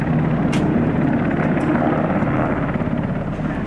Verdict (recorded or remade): recorded